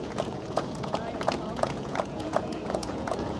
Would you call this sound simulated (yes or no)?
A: yes